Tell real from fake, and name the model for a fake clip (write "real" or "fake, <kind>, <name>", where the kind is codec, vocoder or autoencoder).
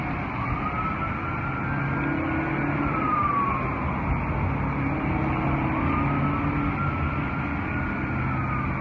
real